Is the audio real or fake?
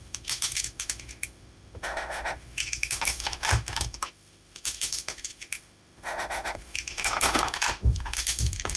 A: fake